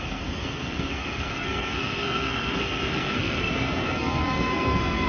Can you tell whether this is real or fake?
fake